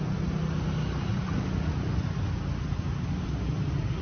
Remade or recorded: recorded